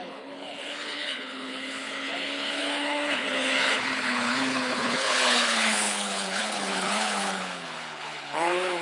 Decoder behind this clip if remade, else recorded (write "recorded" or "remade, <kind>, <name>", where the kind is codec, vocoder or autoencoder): remade, codec, HILCodec